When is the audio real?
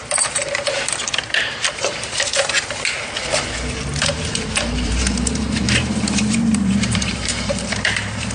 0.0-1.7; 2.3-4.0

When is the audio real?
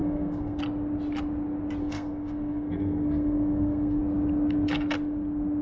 0.6-1.8; 4.0-5.6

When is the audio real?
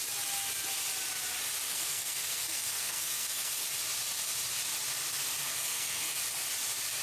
0.0-1.7; 3.5-5.4; 6.2-7.0